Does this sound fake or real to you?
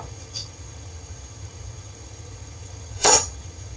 fake